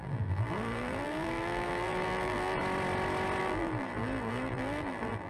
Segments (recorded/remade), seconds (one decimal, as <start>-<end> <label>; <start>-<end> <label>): 0.0-2.6 remade; 2.6-3.4 recorded; 3.4-5.3 remade